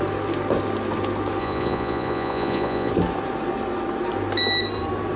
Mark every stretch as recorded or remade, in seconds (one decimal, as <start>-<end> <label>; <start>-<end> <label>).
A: 0.0-1.4 recorded; 1.4-2.9 remade; 2.9-5.2 recorded